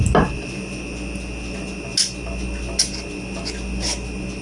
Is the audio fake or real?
real